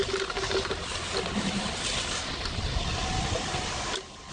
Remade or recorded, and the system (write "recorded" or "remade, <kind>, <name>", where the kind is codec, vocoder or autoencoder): recorded